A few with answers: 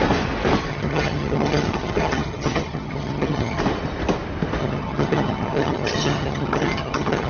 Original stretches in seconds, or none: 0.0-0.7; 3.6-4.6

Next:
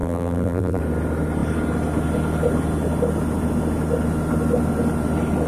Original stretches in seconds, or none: 0.8-5.5

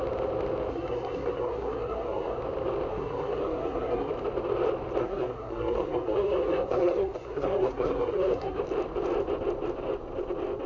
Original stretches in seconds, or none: 0.0-0.7; 2.4-2.9; 4.1-5.0; 8.6-10.7

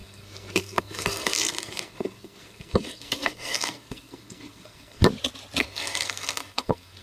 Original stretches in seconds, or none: 5.0-5.6

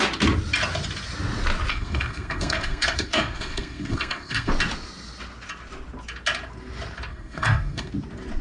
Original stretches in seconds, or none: 0.0-1.7; 4.5-7.1; 7.9-8.4

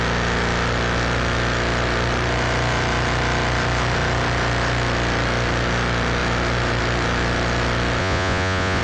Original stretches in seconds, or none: 0.0-8.0

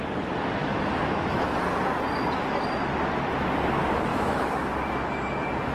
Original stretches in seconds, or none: 0.0-0.6; 1.4-4.1; 4.7-5.7